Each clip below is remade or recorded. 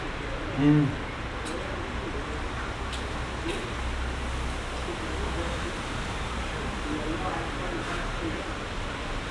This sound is recorded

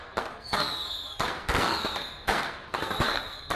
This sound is remade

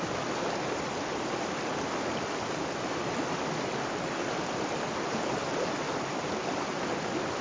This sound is recorded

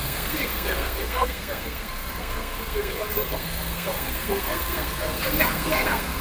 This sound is remade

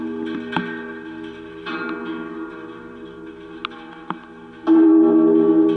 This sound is recorded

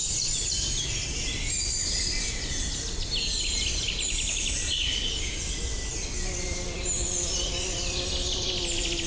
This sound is recorded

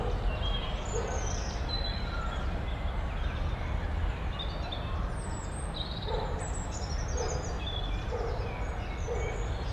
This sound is recorded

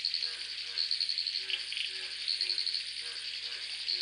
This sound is recorded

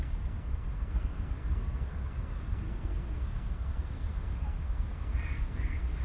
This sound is remade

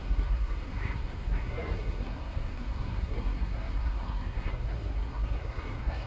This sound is remade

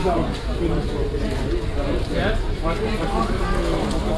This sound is recorded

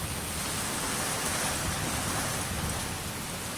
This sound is recorded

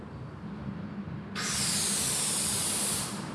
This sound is recorded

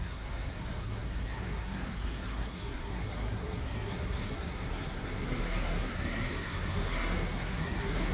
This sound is remade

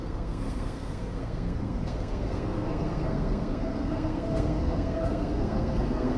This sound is remade